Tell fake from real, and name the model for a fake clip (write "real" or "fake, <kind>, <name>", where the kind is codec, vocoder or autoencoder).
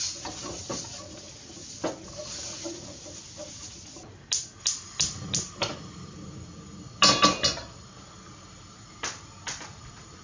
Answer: real